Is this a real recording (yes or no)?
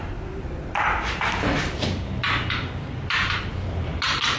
yes